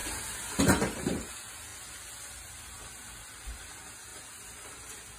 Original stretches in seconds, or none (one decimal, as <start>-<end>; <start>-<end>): 0.0-5.2